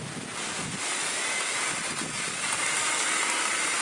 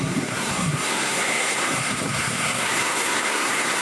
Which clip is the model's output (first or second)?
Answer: second